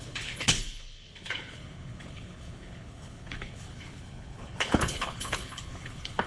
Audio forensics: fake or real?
fake